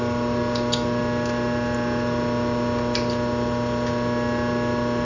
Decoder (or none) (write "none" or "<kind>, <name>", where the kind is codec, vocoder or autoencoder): none